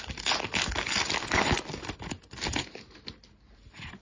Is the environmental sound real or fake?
real